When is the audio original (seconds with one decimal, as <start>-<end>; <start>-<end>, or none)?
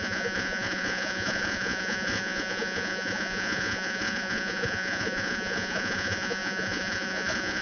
none